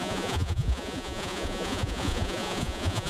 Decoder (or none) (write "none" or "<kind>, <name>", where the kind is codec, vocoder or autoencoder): vocoder, Vocos